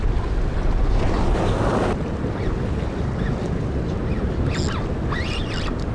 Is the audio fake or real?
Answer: real